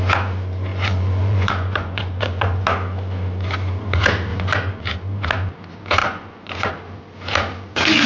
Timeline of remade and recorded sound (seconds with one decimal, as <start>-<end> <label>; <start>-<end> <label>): 0.0-0.7 recorded; 0.7-2.6 remade; 2.6-4.3 recorded; 4.3-4.8 remade; 4.8-6.0 recorded; 6.0-6.7 remade; 6.7-8.1 recorded